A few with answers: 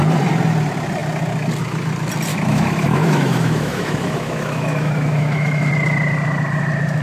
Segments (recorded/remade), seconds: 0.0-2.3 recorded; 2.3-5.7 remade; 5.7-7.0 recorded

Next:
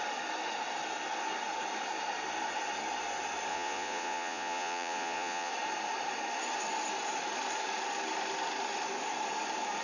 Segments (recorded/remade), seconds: 0.0-3.5 recorded; 3.5-5.5 remade; 5.5-9.8 recorded

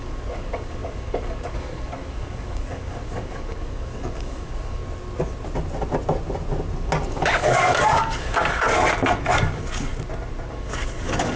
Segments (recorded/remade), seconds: 0.0-4.8 remade; 4.8-7.1 recorded; 7.1-8.4 remade; 8.4-9.2 recorded; 9.2-9.9 remade; 9.9-10.5 recorded; 10.5-11.4 remade